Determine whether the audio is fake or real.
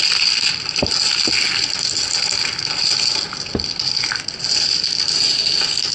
real